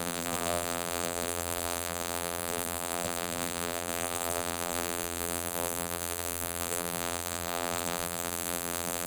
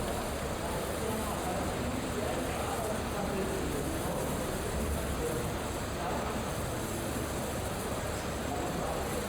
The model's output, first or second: first